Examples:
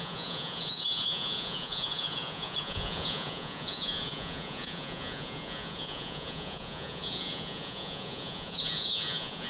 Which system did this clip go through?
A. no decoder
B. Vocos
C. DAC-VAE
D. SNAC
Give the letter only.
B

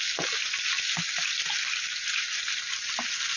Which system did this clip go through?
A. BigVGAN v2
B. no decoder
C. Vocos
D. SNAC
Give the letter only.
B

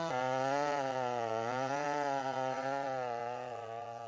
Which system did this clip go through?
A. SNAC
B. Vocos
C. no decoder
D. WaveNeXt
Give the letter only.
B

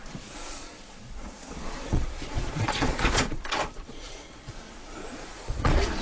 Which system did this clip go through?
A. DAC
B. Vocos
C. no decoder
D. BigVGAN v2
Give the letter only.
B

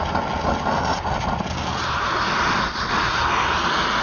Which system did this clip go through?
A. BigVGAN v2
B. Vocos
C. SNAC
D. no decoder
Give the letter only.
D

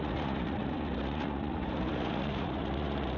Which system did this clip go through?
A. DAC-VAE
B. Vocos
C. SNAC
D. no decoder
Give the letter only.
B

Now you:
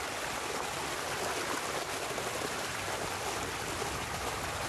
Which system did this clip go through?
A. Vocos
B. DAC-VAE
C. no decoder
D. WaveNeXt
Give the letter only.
C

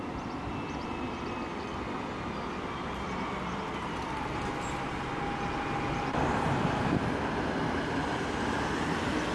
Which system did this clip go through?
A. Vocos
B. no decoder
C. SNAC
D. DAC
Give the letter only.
B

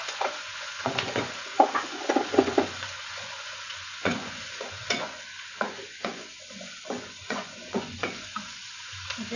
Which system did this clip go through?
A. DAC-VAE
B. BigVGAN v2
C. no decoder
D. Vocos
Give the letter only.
D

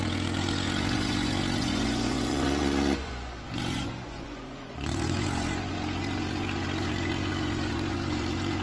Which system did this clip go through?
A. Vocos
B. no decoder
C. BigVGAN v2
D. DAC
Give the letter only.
A